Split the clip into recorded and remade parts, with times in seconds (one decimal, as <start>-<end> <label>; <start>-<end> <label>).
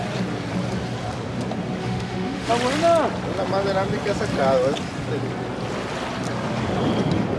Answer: 0.0-1.8 recorded; 1.8-2.5 remade; 2.5-7.4 recorded